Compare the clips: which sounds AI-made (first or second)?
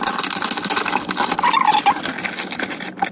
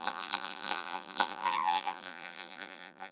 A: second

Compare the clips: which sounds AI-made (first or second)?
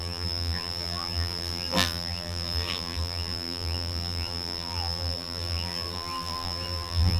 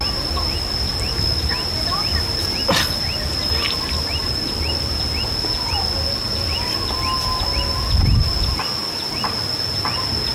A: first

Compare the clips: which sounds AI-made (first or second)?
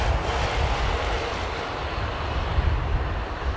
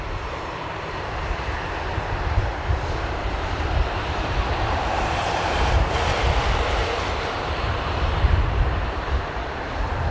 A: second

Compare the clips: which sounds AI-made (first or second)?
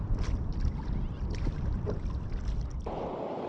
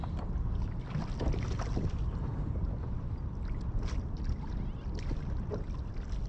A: first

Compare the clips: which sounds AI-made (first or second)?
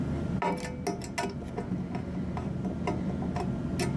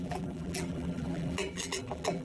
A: second